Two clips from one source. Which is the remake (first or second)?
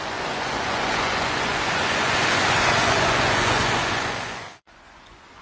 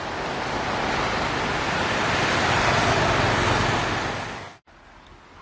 first